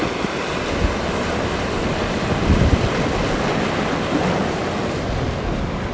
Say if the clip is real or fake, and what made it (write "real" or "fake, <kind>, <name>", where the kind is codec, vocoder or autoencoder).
real